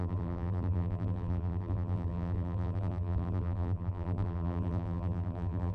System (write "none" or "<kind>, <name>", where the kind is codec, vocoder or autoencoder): vocoder, BigVGAN v2